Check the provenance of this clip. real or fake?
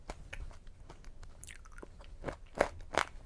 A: real